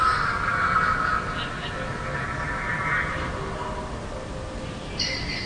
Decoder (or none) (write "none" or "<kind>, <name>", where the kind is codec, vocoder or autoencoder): none